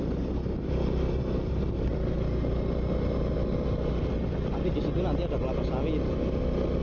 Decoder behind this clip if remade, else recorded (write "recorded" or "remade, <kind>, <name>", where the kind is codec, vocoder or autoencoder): recorded